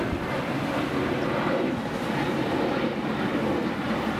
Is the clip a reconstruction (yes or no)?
no